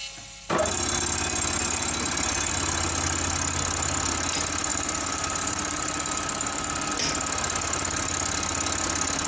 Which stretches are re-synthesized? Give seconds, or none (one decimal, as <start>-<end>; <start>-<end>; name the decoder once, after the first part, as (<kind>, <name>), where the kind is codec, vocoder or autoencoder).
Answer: 4.7-6.9 (vocoder, BigVGAN v2)